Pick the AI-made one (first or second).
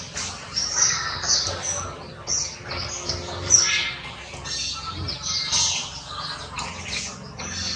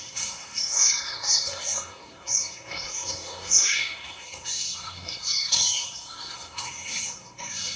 second